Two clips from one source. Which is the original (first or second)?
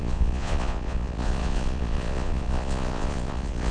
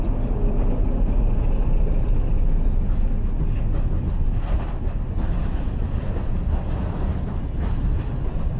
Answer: second